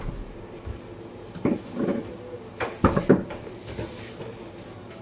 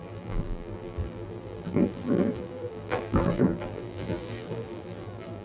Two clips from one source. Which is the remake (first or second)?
second